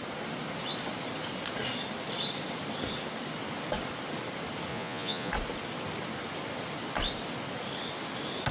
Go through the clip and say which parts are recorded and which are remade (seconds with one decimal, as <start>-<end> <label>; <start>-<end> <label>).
0.0-4.7 recorded; 4.7-5.3 remade; 5.3-8.5 recorded